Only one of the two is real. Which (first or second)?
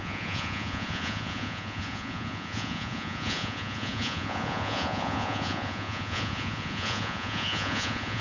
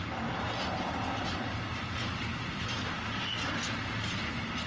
second